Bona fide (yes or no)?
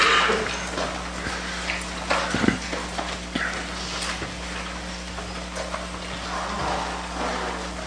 yes